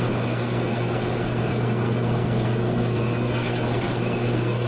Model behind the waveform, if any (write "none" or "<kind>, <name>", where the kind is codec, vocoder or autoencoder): codec, SNAC